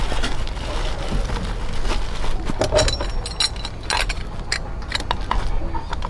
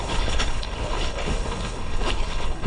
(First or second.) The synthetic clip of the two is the second